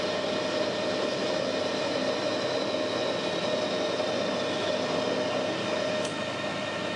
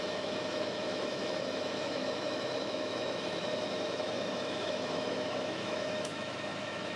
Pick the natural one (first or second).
first